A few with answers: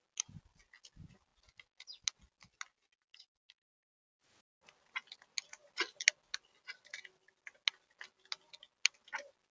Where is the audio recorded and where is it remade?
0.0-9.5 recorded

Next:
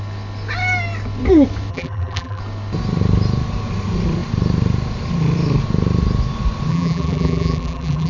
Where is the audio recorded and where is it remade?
0.0-1.7 recorded; 1.7-2.4 remade; 2.4-6.7 recorded; 6.7-8.1 remade

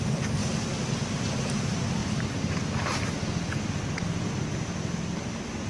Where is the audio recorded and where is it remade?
0.0-0.4 recorded; 0.4-1.2 remade; 1.2-2.0 recorded; 2.0-5.7 remade

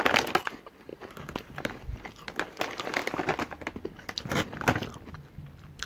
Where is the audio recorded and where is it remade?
0.0-0.9 recorded; 0.9-1.7 remade; 1.7-5.9 recorded

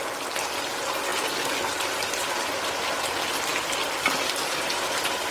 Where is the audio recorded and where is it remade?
0.0-5.3 recorded